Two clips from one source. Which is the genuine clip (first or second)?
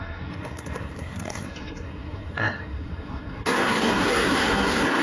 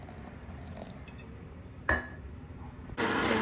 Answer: second